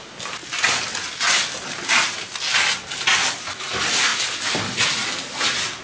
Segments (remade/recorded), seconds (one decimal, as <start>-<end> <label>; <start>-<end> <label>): 0.0-5.8 recorded